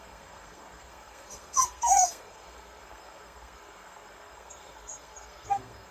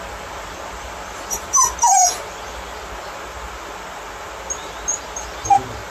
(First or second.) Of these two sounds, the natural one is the second